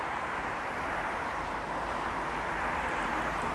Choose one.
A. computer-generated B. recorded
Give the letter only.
A